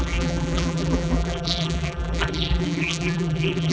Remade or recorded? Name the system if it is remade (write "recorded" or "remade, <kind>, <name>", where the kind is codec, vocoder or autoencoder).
remade, vocoder, BigVGAN v2